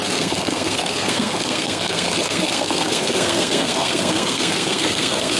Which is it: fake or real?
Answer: fake